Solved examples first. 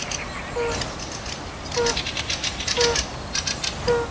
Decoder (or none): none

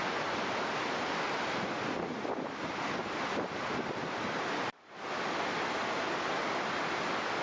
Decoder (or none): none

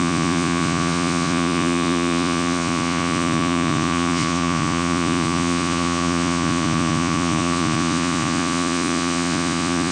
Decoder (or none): vocoder, Vocos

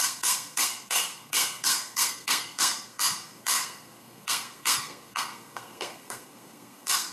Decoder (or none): codec, SNAC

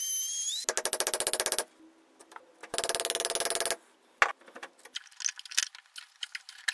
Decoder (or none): none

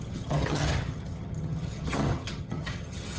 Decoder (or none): vocoder, HiFi-GAN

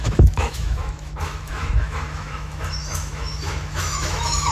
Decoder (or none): autoencoder, DAC-VAE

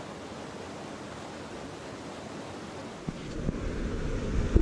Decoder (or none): none